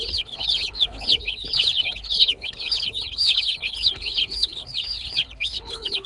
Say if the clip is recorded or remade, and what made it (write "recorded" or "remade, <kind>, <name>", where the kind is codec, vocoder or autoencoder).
remade, codec, HILCodec